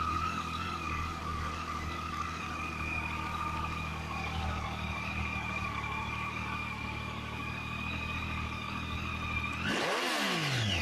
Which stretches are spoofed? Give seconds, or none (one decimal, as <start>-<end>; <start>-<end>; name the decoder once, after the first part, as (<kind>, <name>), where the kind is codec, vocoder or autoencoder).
0.0-9.1 (codec, DAC)